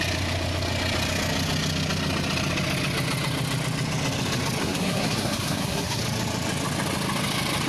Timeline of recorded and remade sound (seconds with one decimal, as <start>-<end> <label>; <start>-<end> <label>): 0.0-4.6 recorded; 4.6-6.0 remade; 6.0-7.7 recorded